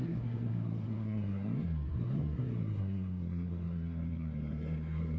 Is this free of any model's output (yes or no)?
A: no